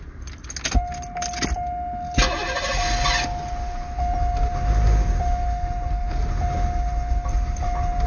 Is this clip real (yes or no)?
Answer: yes